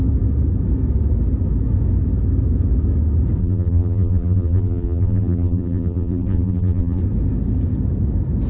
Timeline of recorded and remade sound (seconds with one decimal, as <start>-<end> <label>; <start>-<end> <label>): 0.0-3.4 recorded; 3.4-7.0 remade; 7.0-8.5 recorded